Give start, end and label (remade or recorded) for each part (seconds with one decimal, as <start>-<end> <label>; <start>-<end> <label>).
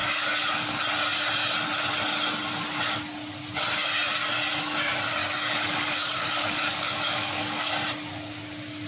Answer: 0.0-0.8 remade; 0.8-5.2 recorded; 5.2-7.7 remade; 7.7-8.9 recorded